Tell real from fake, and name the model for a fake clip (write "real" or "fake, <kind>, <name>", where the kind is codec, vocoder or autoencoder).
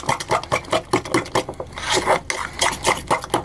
real